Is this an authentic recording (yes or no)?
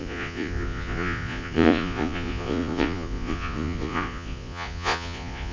no